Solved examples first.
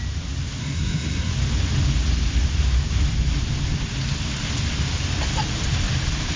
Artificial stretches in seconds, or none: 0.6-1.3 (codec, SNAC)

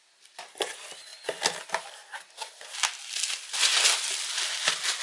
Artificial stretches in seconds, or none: none

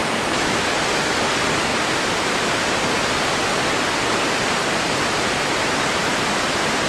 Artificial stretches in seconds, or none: 0.0-0.6 (autoencoder, DAC-VAE)

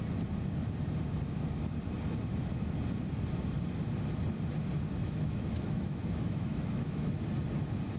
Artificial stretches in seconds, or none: 5.0-7.1 (autoencoder, DAC-VAE)

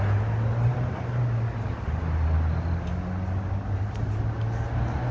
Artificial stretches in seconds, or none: none

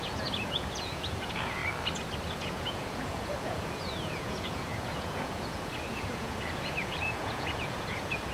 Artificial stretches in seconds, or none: 0.0-1.6 (vocoder, Vocos); 2.3-8.3

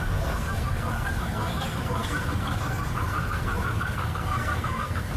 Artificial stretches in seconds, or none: 0.0-5.2 (codec, SNAC)

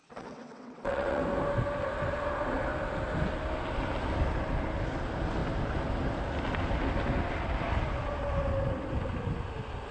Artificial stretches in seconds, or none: 0.0-1.2 (vocoder, WaveNeXt)